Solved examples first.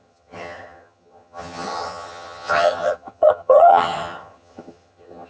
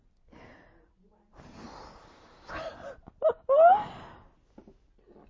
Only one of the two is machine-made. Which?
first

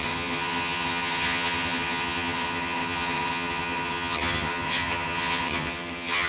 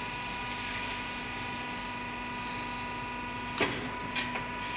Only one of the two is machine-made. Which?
first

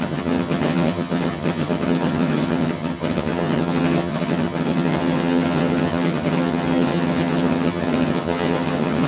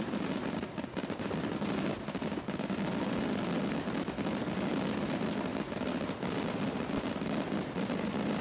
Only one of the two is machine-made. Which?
first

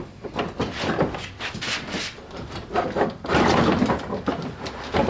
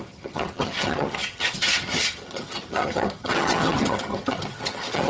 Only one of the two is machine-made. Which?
second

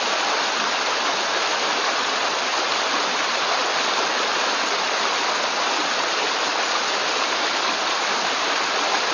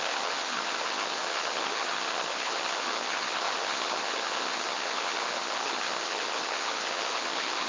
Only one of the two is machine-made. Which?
second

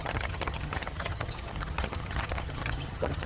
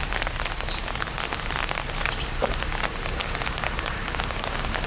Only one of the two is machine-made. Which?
first